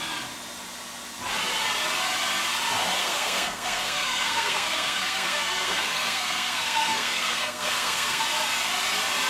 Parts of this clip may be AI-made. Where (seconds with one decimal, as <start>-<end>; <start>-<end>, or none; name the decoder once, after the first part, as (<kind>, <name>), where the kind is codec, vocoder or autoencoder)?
3.0-8.2 (codec, SNAC)

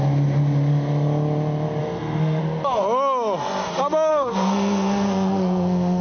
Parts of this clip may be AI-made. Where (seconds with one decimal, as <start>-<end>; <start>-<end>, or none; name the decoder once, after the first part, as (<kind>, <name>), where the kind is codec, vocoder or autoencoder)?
1.8-2.4 (codec, SNAC); 4.1-6.0

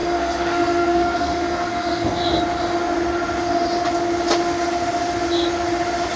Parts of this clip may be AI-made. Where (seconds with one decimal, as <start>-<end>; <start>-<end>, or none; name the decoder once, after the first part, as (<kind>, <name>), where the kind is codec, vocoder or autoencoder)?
0.0-2.2 (codec, SNAC)

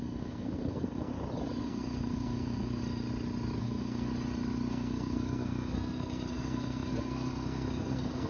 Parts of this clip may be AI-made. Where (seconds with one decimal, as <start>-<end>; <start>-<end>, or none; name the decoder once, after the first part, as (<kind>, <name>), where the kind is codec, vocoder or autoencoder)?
0.0-1.1 (codec, SNAC); 1.6-2.8; 3.6-4.1; 4.7-8.3

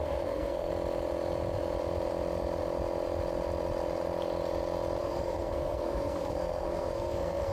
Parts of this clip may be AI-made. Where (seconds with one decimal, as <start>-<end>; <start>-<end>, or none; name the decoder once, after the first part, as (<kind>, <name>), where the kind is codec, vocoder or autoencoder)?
0.0-0.7 (codec, SNAC); 5.0-7.5

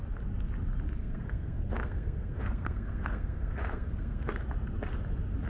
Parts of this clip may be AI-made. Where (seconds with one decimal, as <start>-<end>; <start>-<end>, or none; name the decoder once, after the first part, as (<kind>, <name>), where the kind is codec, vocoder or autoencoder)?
1.0-4.3 (codec, SNAC)

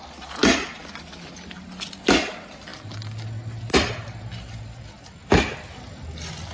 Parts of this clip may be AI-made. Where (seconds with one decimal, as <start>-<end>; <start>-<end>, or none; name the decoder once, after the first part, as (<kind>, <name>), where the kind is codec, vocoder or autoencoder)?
none